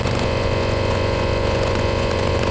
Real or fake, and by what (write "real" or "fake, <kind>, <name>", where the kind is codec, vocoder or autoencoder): fake, vocoder, Vocos